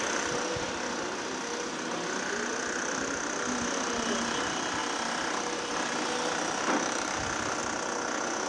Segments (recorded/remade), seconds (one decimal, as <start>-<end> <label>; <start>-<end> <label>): 0.0-8.5 recorded